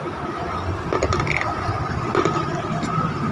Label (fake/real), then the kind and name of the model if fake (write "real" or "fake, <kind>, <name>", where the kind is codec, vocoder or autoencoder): real